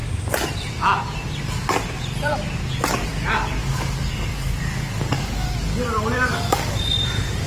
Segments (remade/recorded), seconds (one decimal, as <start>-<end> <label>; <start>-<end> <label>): 0.0-3.6 recorded; 3.6-6.8 remade; 6.8-7.5 recorded